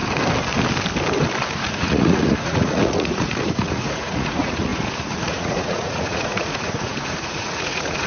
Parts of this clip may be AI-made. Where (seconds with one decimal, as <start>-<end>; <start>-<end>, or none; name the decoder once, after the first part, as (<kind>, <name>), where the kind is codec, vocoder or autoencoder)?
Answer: 1.5-8.1 (vocoder, Vocos)